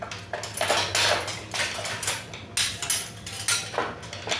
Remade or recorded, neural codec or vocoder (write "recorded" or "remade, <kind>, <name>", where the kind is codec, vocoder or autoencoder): recorded